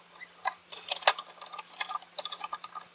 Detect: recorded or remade recorded